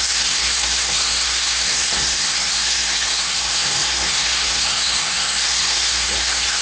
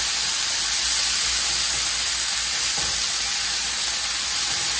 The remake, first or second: first